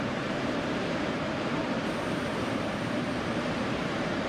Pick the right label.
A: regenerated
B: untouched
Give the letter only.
A